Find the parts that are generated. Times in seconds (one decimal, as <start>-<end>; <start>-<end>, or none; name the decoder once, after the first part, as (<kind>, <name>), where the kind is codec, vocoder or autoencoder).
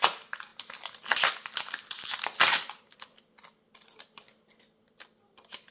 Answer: none